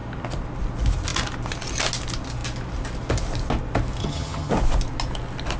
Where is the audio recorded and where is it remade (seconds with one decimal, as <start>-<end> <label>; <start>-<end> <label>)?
0.0-4.0 recorded; 4.0-4.5 remade; 4.5-5.6 recorded